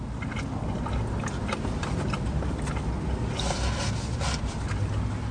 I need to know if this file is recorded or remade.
recorded